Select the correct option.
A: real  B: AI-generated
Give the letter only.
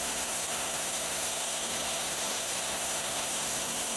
B